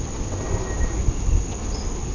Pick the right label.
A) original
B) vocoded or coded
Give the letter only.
A